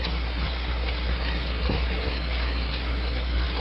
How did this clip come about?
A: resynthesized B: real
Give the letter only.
A